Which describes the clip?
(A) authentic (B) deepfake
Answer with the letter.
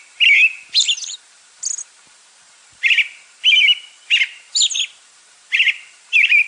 A